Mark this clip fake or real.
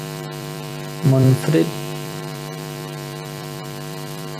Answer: fake